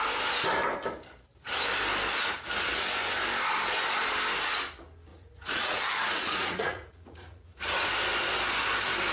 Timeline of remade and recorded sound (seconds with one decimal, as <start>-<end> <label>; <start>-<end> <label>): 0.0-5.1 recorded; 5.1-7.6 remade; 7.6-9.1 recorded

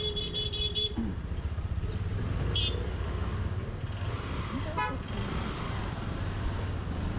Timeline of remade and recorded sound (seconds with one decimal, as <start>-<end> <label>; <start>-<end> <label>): 0.0-7.2 recorded

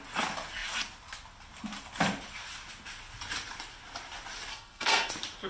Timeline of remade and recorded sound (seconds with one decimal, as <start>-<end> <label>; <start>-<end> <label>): 0.0-4.5 recorded; 4.5-5.1 remade; 5.1-5.5 recorded

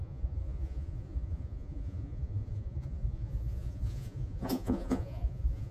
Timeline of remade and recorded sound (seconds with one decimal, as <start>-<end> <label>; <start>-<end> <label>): 0.0-5.7 remade

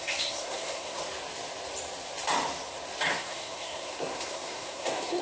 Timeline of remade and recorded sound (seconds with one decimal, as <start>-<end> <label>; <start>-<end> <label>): 0.0-1.0 remade; 1.0-3.1 recorded; 3.1-5.2 remade

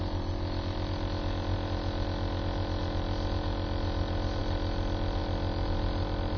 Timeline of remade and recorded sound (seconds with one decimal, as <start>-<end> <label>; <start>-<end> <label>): 0.0-6.4 recorded

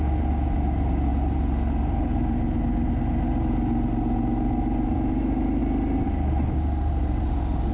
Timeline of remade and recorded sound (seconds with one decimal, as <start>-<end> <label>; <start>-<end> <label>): 0.0-7.7 recorded

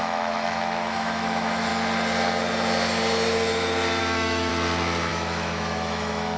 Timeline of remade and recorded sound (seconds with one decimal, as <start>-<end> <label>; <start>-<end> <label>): 0.0-1.7 remade; 1.7-4.0 recorded; 4.0-4.5 remade; 4.5-5.1 recorded; 5.1-6.4 remade